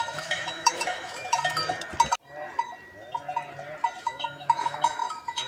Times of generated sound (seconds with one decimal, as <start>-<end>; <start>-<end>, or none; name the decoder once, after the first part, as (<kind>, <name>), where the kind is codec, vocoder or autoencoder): 0.0-1.6 (autoencoder, DAC-VAE); 4.0-5.5